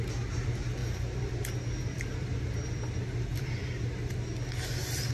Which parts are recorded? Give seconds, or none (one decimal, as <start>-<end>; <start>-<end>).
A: 0.0-0.8; 2.8-3.3; 3.9-5.1